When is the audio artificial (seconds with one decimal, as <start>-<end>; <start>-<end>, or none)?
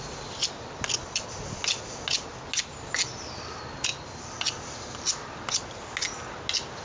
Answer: none